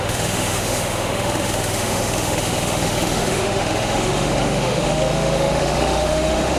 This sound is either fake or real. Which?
fake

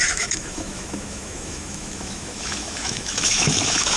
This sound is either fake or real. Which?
fake